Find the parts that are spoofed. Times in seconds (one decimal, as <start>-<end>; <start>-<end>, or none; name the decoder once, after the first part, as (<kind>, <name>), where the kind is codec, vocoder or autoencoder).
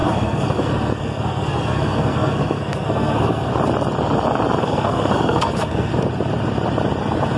0.0-3.5 (codec, SNAC); 4.6-5.9